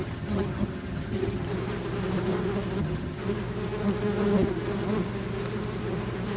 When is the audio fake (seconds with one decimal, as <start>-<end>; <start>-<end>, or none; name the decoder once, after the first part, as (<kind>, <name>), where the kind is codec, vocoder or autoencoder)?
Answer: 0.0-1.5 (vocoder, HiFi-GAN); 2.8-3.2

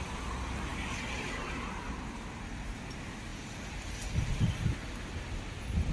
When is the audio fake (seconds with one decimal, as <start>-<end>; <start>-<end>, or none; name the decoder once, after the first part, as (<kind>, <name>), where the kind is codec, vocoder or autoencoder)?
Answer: none

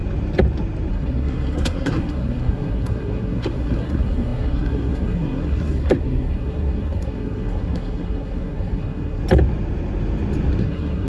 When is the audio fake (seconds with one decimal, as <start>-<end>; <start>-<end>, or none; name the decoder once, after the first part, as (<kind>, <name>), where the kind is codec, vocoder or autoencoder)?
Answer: 0.9-9.2 (codec, SNAC); 10.6-11.1